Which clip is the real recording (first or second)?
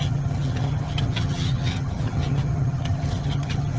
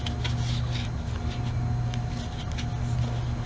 second